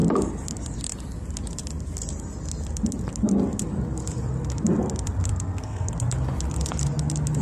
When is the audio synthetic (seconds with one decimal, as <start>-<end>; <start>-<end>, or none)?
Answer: 5.3-5.9